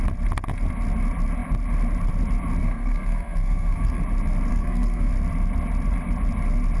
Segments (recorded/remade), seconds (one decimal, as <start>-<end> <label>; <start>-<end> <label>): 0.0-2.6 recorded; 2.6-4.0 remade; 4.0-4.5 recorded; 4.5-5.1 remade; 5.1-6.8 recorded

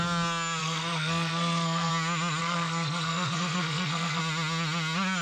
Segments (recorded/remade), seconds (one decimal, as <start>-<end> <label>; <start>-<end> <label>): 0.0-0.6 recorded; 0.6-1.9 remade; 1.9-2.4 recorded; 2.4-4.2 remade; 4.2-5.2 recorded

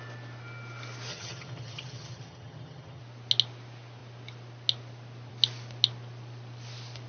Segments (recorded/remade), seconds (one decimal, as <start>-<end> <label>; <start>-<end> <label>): 0.0-1.1 recorded; 1.1-3.0 remade; 3.0-7.1 recorded